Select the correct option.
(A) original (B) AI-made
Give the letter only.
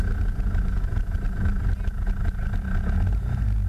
A